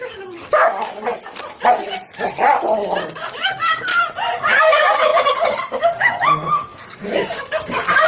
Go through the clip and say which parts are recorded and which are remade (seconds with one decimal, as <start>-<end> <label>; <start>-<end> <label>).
0.0-1.1 remade; 1.1-3.0 recorded; 3.0-3.9 remade; 3.9-4.6 recorded; 4.6-8.1 remade